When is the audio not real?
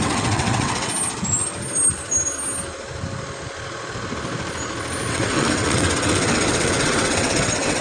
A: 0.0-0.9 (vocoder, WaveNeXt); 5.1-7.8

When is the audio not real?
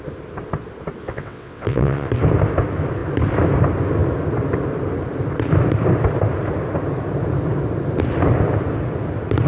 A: 1.0-2.1 (vocoder, WaveNeXt)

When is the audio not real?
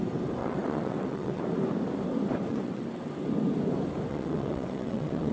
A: 0.4-1.4 (vocoder, WaveNeXt); 2.5-3.1; 4.1-5.3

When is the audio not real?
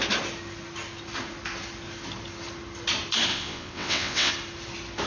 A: 3.3-4.3 (vocoder, WaveNeXt)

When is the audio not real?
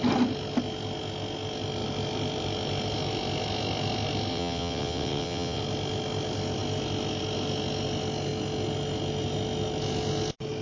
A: 4.3-5.6 (vocoder, WaveNeXt)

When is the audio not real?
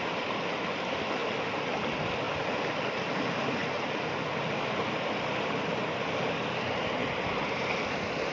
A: none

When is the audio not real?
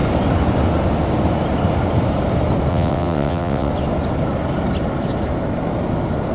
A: 2.7-3.7 (vocoder, WaveNeXt)